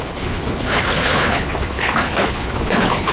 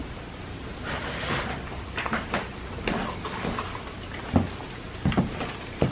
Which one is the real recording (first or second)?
second